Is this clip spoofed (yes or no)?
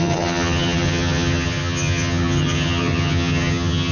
yes